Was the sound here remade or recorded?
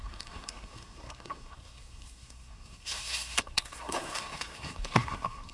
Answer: remade